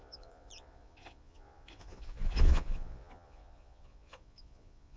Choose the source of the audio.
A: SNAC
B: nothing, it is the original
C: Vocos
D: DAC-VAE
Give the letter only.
C